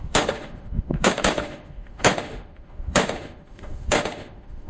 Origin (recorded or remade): remade